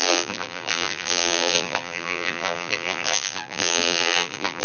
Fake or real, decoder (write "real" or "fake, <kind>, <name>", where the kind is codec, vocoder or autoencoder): fake, vocoder, BigVGAN v2